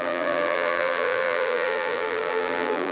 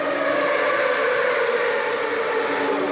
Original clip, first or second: second